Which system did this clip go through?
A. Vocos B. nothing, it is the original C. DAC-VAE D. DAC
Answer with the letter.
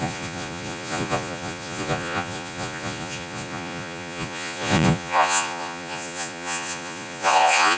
A